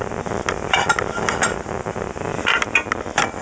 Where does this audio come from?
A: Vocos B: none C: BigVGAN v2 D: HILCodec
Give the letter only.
B